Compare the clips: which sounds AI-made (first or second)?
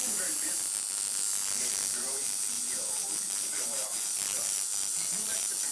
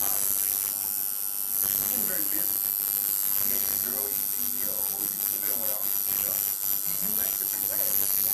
first